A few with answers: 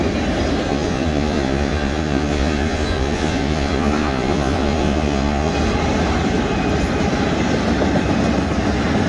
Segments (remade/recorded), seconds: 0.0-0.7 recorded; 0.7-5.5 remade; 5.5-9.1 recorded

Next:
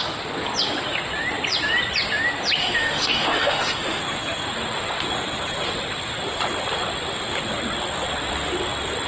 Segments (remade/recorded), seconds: 0.0-2.6 recorded; 2.6-4.0 remade; 4.0-9.1 recorded

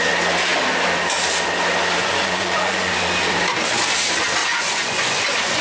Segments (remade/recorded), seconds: 0.0-2.0 recorded; 2.0-2.9 remade; 2.9-4.4 recorded; 4.4-5.6 remade

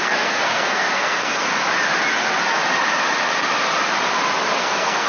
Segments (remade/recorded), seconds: 0.0-1.5 remade; 1.5-4.6 recorded; 4.6-5.1 remade

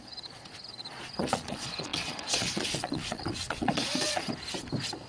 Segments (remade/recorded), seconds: 0.0-4.3 remade; 4.3-5.1 recorded

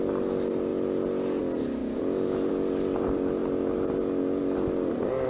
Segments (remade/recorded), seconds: 0.0-0.7 recorded; 0.7-1.4 remade; 1.4-1.8 recorded; 1.8-2.5 remade; 2.5-5.3 recorded